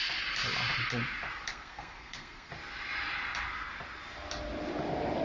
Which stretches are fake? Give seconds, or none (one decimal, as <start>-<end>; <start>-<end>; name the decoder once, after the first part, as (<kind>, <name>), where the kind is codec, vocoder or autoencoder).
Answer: 1.5-2.5 (codec, SNAC)